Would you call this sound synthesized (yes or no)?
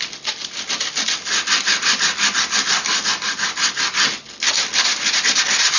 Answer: no